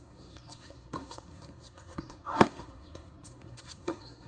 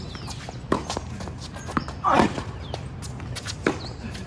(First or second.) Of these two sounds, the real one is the second